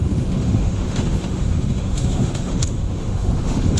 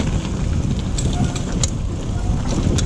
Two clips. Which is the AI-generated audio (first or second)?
first